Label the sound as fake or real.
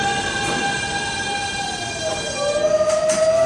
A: real